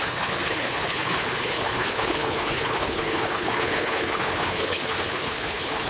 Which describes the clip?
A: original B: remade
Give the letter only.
B